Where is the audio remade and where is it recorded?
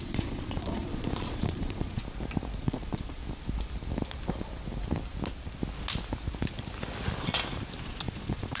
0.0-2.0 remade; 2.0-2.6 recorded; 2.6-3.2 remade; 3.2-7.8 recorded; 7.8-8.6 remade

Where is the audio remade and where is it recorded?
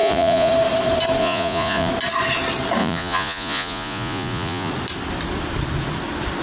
0.0-0.5 remade; 0.5-1.2 recorded; 1.2-1.9 remade; 1.9-2.8 recorded; 2.8-4.7 remade; 4.7-6.4 recorded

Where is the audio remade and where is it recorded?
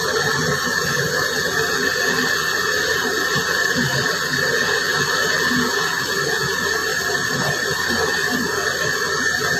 0.0-6.8 remade; 6.8-9.2 recorded; 9.2-9.6 remade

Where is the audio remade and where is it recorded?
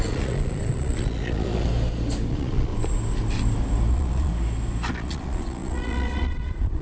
0.0-1.7 remade; 1.7-2.3 recorded; 2.3-2.7 remade; 2.7-3.9 recorded; 3.9-4.3 remade; 4.3-4.9 recorded; 4.9-6.8 remade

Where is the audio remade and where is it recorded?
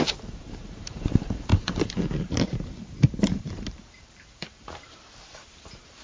0.0-6.0 remade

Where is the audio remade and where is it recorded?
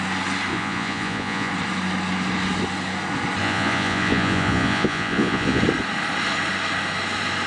0.0-0.5 recorded; 0.5-1.5 remade; 1.5-3.4 recorded; 3.4-5.6 remade; 5.6-7.5 recorded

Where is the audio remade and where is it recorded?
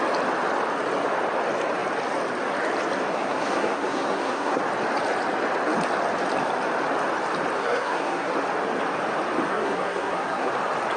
0.0-3.1 recorded; 3.1-4.6 remade; 4.6-7.6 recorded; 7.6-8.3 remade; 8.3-9.5 recorded; 9.5-10.5 remade; 10.5-11.0 recorded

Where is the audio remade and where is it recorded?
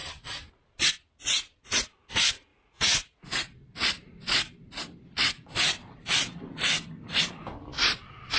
0.0-2.5 recorded; 2.5-3.3 remade; 3.3-8.4 recorded